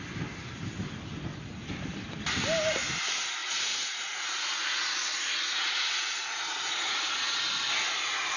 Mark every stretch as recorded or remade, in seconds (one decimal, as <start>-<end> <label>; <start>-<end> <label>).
0.0-3.4 recorded; 3.4-7.4 remade; 7.4-8.4 recorded